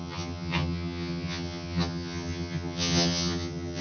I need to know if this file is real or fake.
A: fake